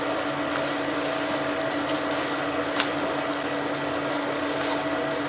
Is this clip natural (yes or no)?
yes